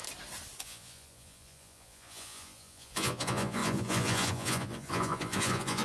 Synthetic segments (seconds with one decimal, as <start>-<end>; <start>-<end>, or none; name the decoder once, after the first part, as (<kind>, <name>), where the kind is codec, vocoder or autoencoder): 0.6-5.8 (vocoder, Vocos)